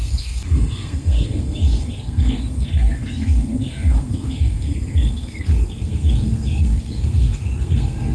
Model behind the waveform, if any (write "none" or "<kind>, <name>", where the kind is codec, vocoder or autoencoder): codec, SNAC